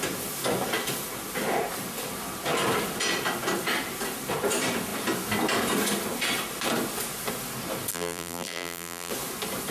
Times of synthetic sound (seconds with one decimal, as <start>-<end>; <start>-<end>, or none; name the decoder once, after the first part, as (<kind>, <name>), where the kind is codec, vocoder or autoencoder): 7.9-9.1 (vocoder, BigVGAN v2)